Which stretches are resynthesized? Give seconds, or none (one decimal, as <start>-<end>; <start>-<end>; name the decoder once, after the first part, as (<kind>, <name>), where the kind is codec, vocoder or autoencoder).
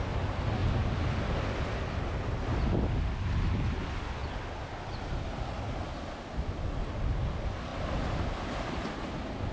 none